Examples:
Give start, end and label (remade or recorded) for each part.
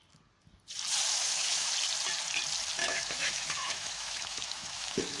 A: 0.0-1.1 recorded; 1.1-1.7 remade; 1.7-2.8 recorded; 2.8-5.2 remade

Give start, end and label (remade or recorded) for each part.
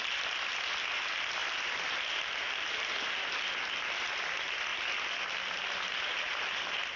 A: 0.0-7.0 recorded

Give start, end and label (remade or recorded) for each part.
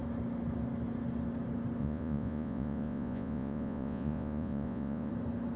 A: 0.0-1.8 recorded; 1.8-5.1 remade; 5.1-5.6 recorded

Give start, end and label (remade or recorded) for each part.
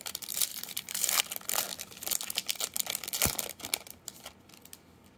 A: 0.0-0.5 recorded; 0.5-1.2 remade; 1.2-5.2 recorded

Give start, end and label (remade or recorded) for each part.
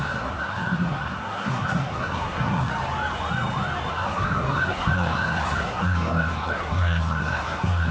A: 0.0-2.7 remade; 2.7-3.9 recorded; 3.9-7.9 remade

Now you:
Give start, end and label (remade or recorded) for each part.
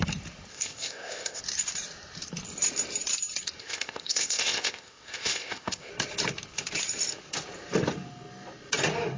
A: 0.0-0.5 recorded; 0.5-1.4 remade; 1.4-3.6 recorded; 3.6-5.9 remade; 5.9-9.2 recorded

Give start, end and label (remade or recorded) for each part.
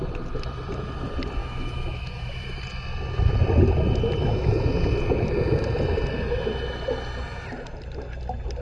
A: 0.0-1.4 recorded; 1.4-2.6 remade; 2.6-8.6 recorded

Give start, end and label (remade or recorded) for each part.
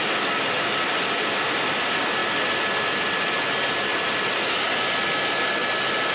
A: 0.0-6.1 recorded